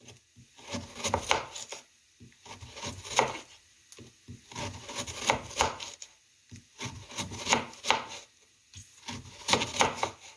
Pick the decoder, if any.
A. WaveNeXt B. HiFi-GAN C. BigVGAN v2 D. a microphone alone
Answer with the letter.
D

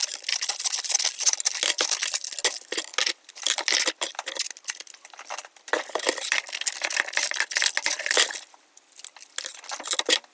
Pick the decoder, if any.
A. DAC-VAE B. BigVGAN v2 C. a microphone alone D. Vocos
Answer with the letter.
C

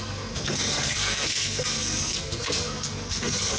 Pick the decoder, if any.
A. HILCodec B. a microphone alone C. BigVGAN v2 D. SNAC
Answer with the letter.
D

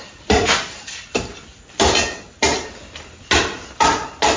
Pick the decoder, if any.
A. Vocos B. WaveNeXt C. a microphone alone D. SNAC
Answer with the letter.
C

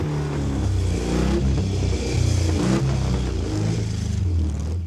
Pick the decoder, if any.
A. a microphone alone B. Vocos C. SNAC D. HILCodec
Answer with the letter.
A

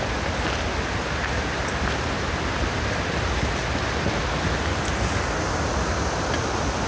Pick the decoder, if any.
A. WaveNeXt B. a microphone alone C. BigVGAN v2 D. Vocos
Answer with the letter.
B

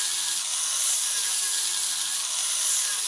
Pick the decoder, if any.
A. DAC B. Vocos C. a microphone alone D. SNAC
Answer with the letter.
C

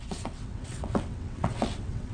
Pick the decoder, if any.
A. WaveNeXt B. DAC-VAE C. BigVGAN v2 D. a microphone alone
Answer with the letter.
A